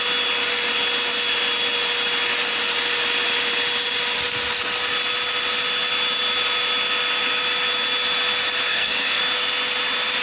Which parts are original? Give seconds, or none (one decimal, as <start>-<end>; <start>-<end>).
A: 0.0-8.7; 9.2-10.2